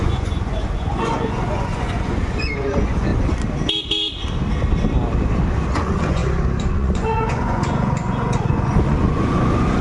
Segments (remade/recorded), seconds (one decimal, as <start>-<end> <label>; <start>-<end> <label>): 0.0-3.1 remade; 3.1-5.7 recorded; 5.7-6.2 remade; 6.2-6.7 recorded; 6.7-9.8 remade